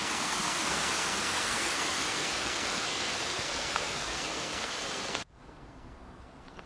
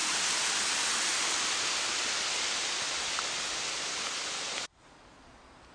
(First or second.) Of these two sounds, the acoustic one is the second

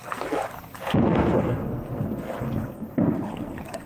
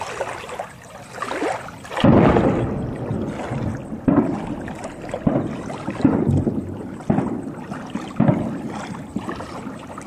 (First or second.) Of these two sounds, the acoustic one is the second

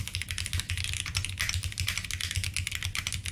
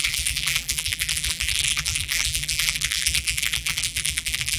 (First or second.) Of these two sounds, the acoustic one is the first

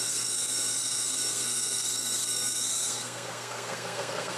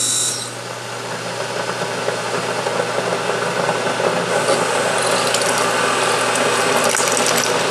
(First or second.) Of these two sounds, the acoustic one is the second